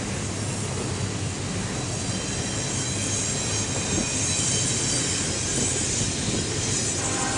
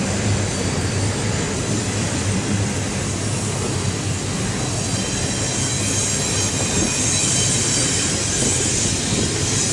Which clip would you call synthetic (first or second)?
second